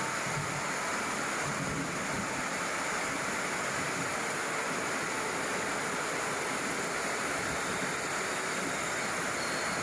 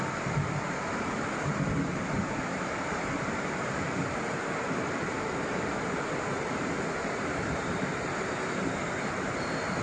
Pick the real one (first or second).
first